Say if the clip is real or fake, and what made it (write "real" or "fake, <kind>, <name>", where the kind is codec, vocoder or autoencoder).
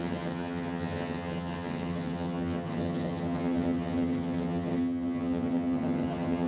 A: fake, vocoder, HiFi-GAN